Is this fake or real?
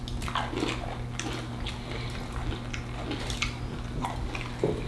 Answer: real